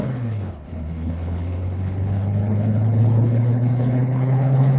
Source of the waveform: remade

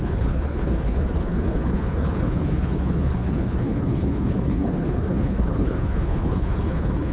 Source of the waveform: remade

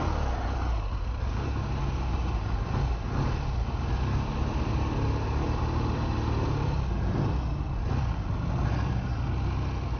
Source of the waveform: recorded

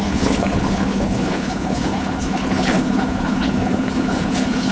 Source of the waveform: remade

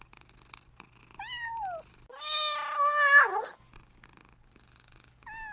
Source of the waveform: recorded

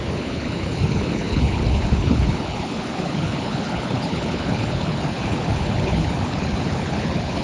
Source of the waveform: remade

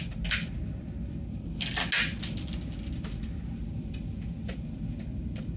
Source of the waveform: recorded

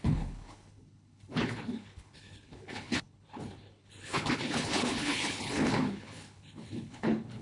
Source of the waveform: remade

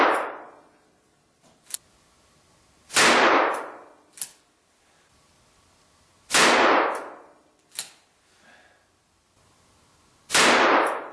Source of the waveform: recorded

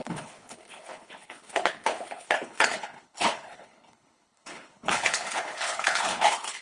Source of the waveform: remade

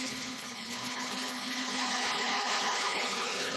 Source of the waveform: remade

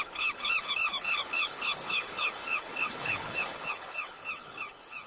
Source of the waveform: remade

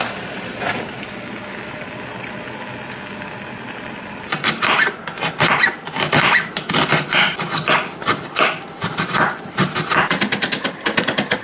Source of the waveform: recorded